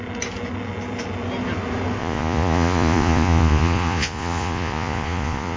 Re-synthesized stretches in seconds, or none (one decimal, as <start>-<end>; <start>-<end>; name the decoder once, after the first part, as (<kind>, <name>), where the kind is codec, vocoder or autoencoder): 2.0-5.6 (vocoder, Vocos)